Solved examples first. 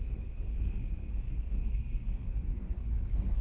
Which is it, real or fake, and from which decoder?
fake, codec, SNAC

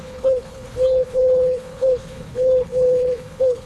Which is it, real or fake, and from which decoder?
fake, codec, HILCodec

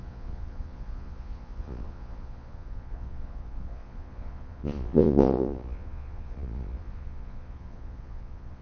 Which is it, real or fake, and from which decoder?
fake, vocoder, Vocos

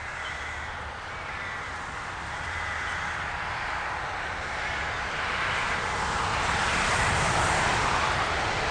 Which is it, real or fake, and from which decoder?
real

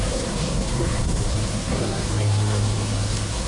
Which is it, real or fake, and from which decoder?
fake, codec, SNAC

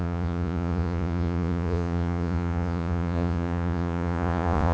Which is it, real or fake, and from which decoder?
fake, vocoder, Vocos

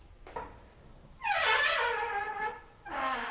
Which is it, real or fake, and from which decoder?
real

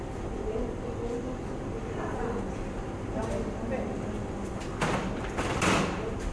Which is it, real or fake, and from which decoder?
real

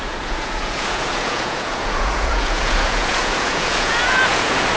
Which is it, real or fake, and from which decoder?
fake, vocoder, Vocos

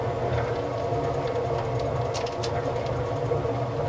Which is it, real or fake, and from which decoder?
real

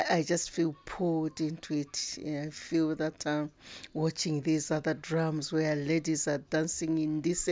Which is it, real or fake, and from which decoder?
real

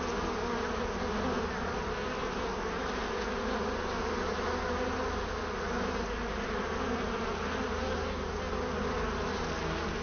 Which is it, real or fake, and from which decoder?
real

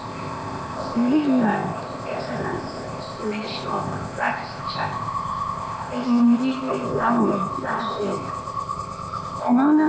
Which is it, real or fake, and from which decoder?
fake, codec, ZipCodec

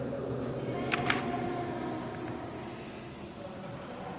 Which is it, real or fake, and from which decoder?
real